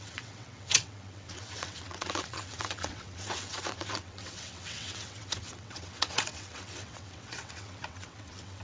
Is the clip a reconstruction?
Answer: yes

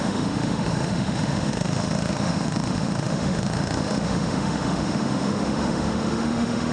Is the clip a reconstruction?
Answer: yes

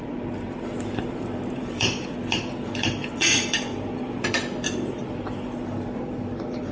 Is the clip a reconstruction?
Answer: yes